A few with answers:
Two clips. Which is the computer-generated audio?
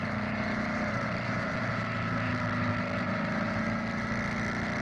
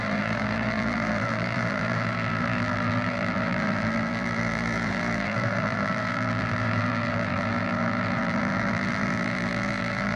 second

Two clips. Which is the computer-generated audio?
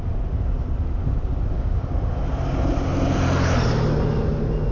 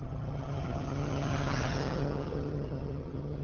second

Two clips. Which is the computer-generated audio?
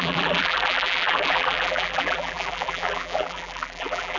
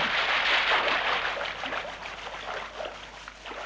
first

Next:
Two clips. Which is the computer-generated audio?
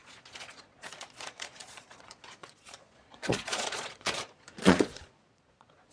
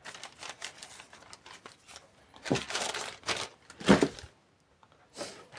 first